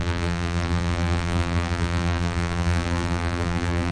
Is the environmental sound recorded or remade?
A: remade